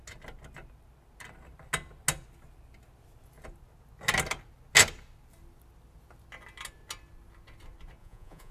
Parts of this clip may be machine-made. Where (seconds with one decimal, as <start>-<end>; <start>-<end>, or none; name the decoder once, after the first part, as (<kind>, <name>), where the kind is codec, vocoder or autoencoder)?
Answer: 8.0-8.5 (vocoder, Vocos)